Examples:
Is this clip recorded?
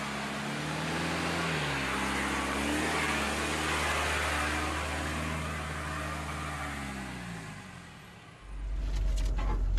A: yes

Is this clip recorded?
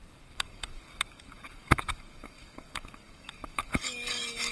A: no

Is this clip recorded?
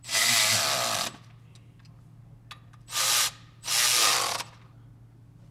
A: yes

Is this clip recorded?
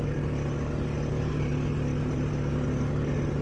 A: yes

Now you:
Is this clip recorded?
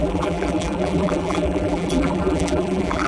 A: no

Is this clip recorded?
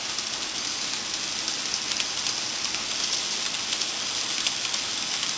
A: yes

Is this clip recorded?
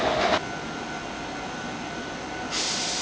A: yes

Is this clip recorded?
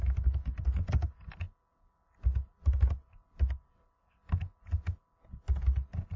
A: yes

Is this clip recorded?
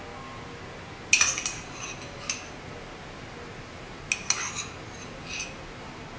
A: yes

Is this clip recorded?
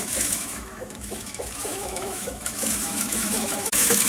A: no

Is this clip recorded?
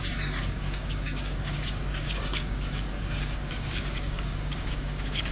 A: no